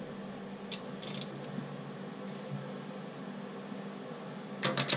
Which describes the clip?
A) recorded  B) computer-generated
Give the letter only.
A